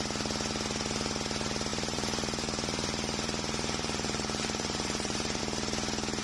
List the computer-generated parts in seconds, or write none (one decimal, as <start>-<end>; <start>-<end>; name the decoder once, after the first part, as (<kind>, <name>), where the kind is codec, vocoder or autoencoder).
1.7-5.4 (vocoder, BigVGAN v2)